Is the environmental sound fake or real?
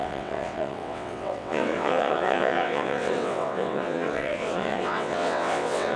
fake